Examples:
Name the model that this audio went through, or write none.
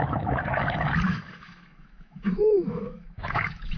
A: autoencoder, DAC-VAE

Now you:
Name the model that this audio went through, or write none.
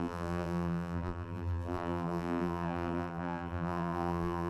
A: vocoder, BigVGAN v2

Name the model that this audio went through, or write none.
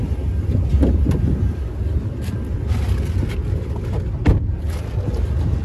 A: none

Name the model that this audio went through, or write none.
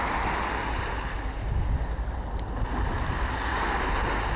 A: none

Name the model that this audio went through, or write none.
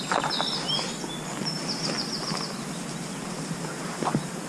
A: none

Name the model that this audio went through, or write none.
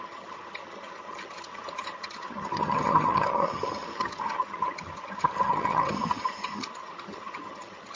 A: vocoder, HiFi-GAN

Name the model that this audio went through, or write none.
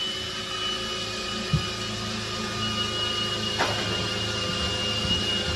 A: none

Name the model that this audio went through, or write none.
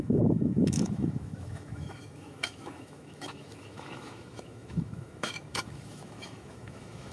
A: autoencoder, DAC-VAE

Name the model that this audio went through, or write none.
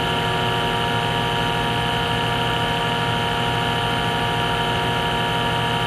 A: none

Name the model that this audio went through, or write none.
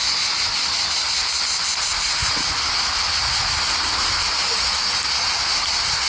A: none